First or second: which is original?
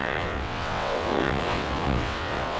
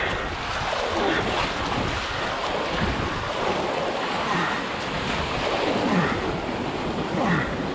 second